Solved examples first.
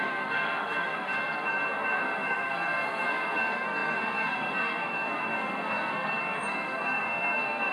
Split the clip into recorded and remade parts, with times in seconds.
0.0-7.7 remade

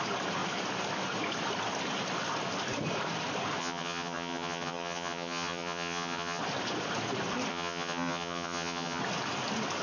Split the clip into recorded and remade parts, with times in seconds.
0.0-3.6 recorded; 3.6-6.4 remade; 6.4-7.5 recorded; 7.5-9.0 remade; 9.0-9.8 recorded

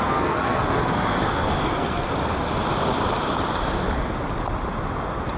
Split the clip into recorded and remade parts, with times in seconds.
0.0-2.1 remade; 2.1-5.4 recorded

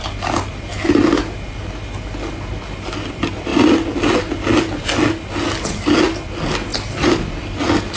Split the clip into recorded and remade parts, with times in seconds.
0.0-8.0 recorded

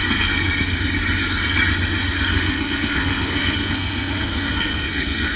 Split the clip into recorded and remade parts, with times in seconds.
0.0-0.8 remade; 0.8-2.3 recorded; 2.3-5.4 remade

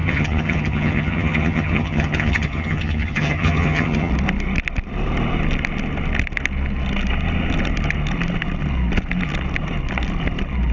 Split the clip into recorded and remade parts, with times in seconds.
0.0-4.1 remade; 4.1-10.7 recorded